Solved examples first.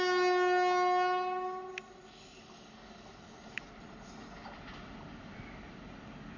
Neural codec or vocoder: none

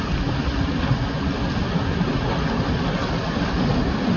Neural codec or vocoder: none